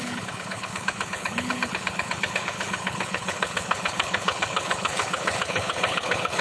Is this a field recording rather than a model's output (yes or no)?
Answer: no